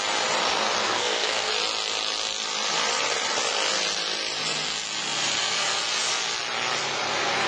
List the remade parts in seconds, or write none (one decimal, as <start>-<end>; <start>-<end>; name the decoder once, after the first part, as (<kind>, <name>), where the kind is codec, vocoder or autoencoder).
0.8-1.5 (codec, SNAC)